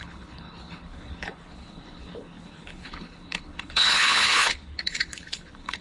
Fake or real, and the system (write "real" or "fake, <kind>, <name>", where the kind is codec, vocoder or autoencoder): fake, codec, HILCodec